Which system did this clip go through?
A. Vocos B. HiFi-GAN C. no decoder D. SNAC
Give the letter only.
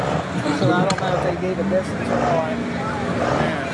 C